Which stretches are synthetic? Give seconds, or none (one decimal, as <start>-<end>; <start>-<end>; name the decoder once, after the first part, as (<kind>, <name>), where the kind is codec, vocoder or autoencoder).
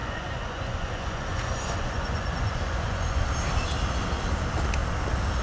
0.0-3.2 (vocoder, Vocos)